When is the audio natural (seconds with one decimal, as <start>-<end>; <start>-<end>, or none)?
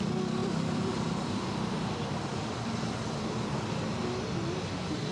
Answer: 0.0-0.4; 1.7-5.1